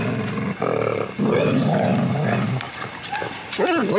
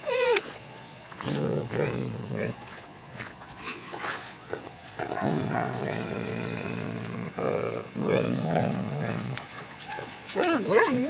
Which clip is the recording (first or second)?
first